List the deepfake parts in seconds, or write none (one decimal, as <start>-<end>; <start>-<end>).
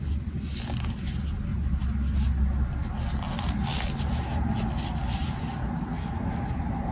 none